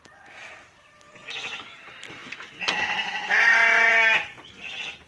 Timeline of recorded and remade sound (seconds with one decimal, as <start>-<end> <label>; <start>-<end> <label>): 0.0-5.1 recorded